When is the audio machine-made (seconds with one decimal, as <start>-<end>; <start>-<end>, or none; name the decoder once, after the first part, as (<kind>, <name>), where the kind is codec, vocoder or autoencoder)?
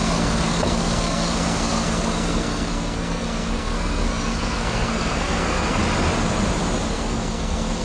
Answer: 0.0-5.8 (codec, SNAC); 6.9-7.8